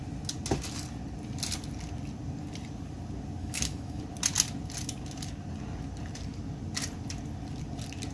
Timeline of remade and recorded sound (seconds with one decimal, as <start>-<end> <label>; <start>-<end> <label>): 0.0-3.4 recorded; 3.4-4.0 remade; 4.0-8.1 recorded